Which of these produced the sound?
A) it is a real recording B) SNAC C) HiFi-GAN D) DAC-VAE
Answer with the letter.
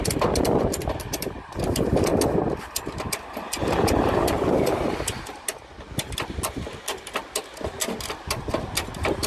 A